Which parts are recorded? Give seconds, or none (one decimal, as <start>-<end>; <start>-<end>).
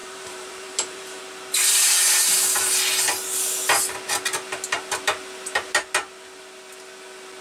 1.2-7.4